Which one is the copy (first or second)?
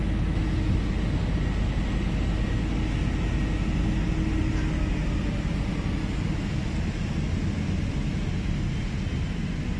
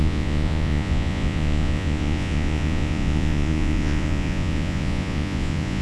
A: second